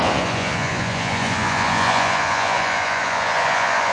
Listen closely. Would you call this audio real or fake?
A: fake